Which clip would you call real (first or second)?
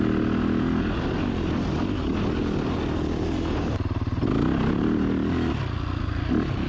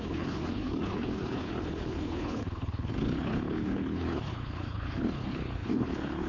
first